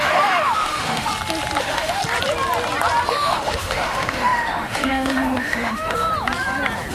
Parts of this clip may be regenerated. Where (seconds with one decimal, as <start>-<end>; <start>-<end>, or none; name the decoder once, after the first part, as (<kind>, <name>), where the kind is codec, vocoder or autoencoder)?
0.0-1.1 (autoencoder, DAC-VAE); 1.6-2.0; 3.1-6.1